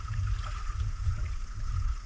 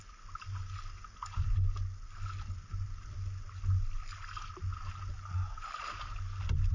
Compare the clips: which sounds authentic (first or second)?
second